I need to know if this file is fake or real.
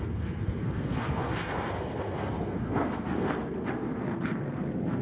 fake